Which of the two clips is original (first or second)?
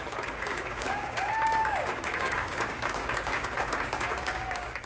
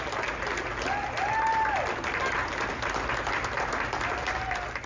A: second